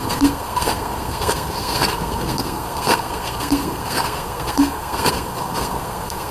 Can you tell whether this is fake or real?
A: fake